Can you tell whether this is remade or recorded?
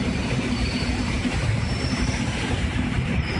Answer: remade